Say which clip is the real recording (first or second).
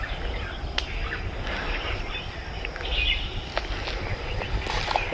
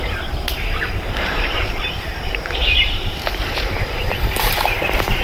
first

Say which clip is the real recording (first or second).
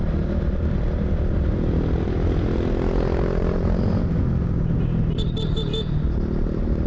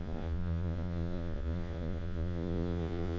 first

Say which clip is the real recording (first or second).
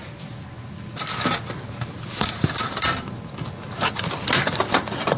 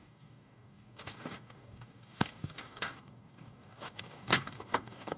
first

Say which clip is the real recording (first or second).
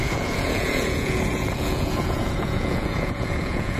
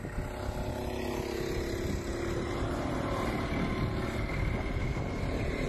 second